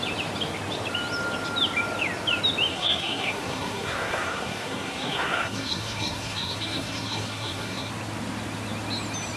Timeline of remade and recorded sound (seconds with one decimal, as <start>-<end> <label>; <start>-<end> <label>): 0.0-2.7 recorded; 2.7-7.9 remade; 7.9-9.4 recorded